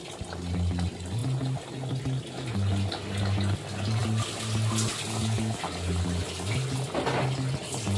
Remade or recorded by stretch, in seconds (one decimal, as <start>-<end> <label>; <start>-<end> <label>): 0.0-8.0 recorded